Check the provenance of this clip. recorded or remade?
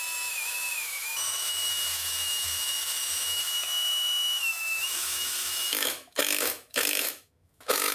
remade